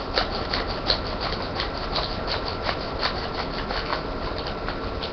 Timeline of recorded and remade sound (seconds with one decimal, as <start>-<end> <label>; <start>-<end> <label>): 0.0-3.9 recorded; 3.9-4.6 remade; 4.6-5.1 recorded